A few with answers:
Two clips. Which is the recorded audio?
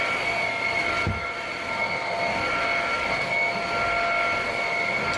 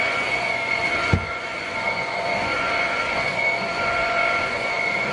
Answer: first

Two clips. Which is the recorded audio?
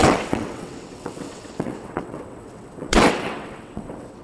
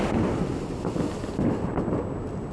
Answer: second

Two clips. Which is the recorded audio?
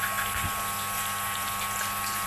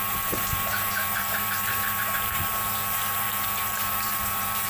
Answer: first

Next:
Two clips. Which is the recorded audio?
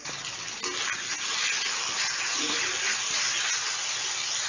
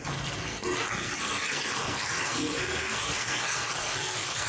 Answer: first